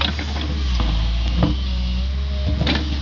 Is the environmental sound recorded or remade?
recorded